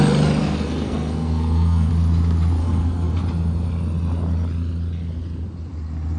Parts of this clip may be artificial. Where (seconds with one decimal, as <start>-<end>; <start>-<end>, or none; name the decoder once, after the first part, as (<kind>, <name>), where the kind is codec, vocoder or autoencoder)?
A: 0.4-1.9 (codec, SNAC); 2.6-3.2